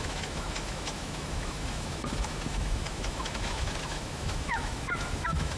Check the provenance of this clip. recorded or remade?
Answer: remade